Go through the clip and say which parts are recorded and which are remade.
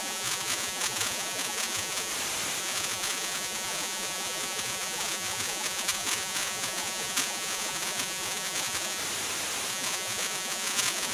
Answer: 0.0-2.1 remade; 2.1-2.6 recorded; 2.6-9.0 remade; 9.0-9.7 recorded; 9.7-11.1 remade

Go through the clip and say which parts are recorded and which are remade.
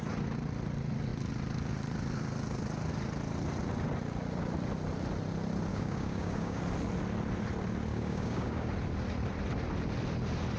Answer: 0.0-5.7 recorded; 5.7-6.6 remade; 6.6-7.9 recorded; 7.9-8.7 remade; 8.7-10.6 recorded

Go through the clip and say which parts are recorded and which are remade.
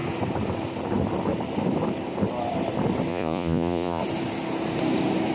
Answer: 0.0-3.1 recorded; 3.1-4.0 remade; 4.0-5.3 recorded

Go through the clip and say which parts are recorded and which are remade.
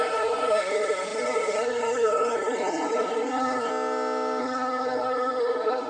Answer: 0.0-3.7 remade; 3.7-4.4 recorded; 4.4-5.9 remade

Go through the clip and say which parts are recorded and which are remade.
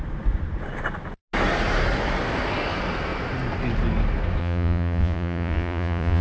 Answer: 0.0-4.4 recorded; 4.4-6.2 remade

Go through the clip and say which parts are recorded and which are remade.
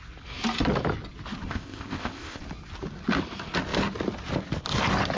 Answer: 0.0-1.5 recorded; 1.5-2.4 remade; 2.4-5.2 recorded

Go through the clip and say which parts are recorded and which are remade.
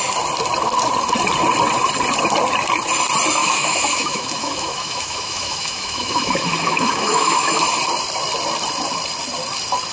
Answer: 0.0-3.4 recorded; 3.4-7.6 remade; 7.6-9.9 recorded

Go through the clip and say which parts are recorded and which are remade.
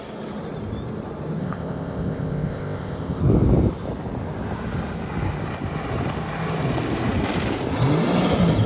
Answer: 0.0-1.4 recorded; 1.4-3.2 remade; 3.2-8.7 recorded